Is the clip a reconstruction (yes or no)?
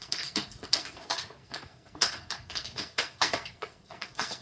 yes